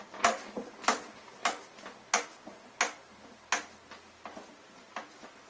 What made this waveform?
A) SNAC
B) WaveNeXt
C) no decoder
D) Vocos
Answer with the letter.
C